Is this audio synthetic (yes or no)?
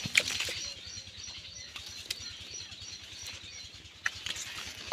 no